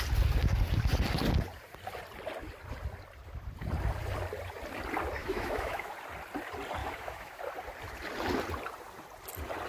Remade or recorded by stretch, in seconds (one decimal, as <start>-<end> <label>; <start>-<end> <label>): 0.0-5.2 recorded; 5.2-5.9 remade; 5.9-6.8 recorded; 6.8-7.4 remade; 7.4-9.7 recorded